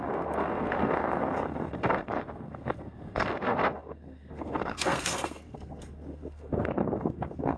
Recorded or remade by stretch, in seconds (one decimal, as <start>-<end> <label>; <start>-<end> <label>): 0.0-7.6 remade